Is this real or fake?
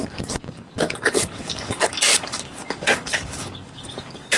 fake